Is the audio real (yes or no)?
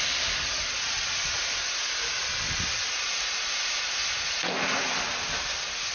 yes